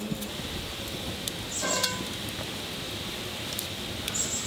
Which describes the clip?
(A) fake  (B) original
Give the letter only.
B